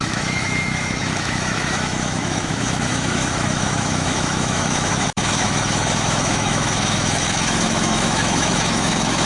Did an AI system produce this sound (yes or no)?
yes